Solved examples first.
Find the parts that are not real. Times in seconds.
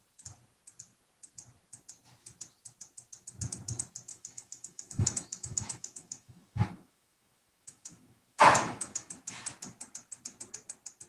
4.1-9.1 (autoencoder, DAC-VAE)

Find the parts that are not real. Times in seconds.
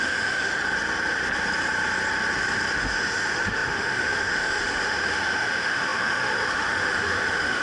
0.0-0.6 (autoencoder, DAC-VAE); 2.8-7.6